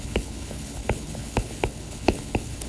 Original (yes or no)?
no